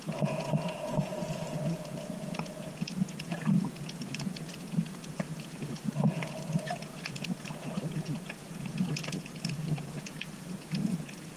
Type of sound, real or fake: fake